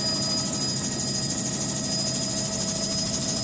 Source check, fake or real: real